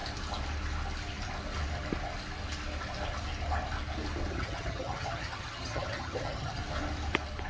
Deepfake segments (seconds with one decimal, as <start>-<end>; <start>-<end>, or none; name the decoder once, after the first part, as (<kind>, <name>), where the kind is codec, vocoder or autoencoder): 4.3-6.6 (vocoder, HiFi-GAN)

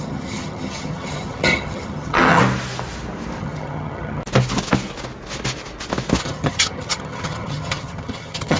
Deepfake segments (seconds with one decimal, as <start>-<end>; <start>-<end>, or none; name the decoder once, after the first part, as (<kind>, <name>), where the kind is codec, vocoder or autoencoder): 0.0-2.4 (vocoder, HiFi-GAN); 3.4-4.2; 6.2-8.6

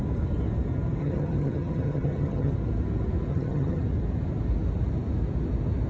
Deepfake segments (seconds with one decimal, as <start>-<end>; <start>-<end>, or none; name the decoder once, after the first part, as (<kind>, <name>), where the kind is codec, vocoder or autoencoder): 1.0-2.5 (vocoder, HiFi-GAN); 3.3-3.8

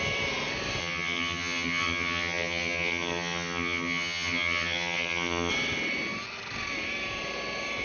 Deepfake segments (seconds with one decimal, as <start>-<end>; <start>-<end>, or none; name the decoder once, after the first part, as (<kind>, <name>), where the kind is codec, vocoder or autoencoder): 0.8-5.5 (vocoder, HiFi-GAN)